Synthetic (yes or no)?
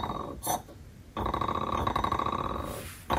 no